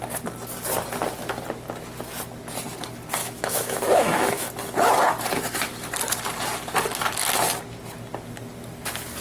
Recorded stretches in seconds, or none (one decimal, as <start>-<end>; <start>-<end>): 0.0-3.2; 4.5-9.2

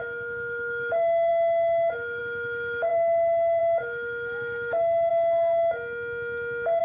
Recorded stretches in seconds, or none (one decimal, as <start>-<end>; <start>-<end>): 5.1-6.8

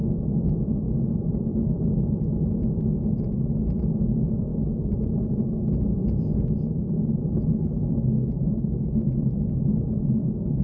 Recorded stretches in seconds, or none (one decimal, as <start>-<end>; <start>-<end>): 4.5-6.9

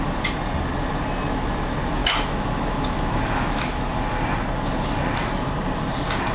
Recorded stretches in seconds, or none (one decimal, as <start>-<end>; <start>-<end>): 0.0-2.0; 3.9-6.3